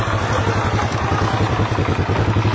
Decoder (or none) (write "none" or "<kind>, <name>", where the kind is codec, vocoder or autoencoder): none